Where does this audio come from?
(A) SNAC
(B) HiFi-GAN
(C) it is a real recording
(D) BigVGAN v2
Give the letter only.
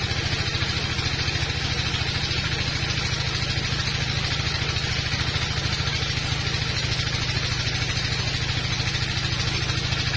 C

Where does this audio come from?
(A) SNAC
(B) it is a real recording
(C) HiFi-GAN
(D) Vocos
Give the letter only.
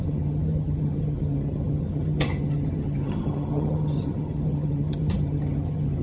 C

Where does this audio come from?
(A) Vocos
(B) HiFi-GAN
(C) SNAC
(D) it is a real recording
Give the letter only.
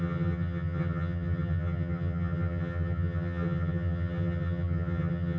B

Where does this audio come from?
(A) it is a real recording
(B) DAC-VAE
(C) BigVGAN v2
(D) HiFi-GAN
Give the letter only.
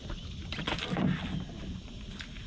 A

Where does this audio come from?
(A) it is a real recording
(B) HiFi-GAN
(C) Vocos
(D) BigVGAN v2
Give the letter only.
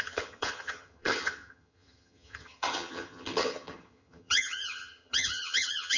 B